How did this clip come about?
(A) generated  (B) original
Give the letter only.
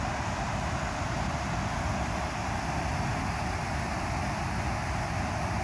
B